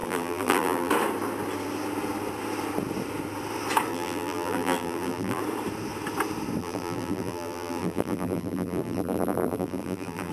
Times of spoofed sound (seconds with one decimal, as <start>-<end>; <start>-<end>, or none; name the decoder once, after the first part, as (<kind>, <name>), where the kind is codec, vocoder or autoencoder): 0.0-0.9 (vocoder, BigVGAN v2); 3.9-5.4; 6.6-10.3